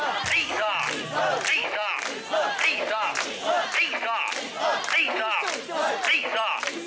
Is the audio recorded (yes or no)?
yes